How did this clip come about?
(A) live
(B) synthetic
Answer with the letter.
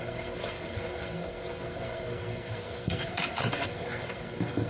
B